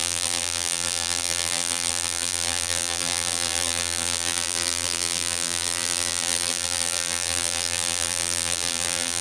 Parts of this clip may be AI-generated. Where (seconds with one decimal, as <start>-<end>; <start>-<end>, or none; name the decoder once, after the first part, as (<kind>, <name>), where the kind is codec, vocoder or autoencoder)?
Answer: 0.0-9.2 (vocoder, BigVGAN v2)